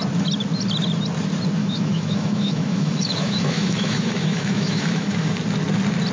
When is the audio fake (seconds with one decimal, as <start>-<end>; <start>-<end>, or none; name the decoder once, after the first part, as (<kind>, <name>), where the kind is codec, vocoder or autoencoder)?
1.6-5.3 (autoencoder, DAC-VAE)